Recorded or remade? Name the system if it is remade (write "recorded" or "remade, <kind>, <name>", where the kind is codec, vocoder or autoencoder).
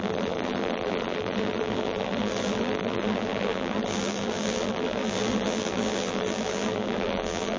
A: remade, vocoder, BigVGAN v2